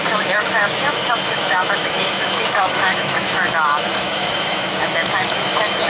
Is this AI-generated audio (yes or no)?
yes